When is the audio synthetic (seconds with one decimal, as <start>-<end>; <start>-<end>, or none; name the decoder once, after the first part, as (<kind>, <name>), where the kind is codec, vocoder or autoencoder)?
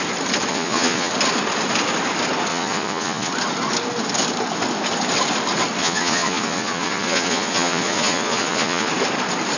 0.5-1.1 (vocoder, Vocos); 2.5-3.3; 5.8-8.9